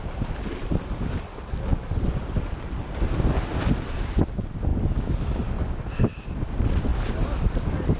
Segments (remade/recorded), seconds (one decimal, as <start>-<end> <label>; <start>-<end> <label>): 0.0-6.9 recorded; 6.9-8.0 remade